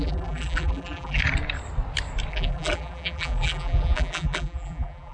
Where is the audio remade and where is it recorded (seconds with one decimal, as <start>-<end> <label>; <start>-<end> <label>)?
0.0-1.2 remade; 1.2-2.3 recorded; 2.3-5.1 remade